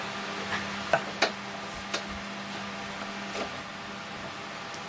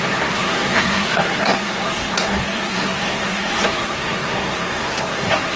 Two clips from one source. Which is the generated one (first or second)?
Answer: second